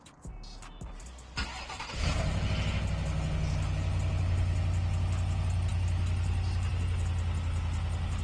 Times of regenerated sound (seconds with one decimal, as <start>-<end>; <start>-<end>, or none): none